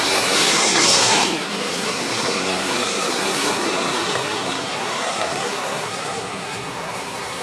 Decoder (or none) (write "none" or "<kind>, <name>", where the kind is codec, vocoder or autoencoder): codec, SNAC